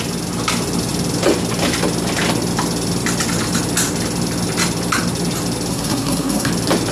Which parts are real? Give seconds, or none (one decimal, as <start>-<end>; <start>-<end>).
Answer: 0.0-5.7; 6.5-6.9